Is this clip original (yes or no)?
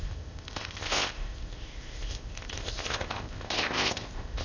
no